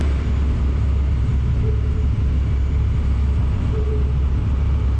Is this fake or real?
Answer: real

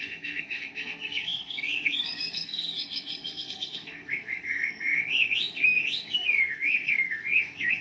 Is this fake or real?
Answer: fake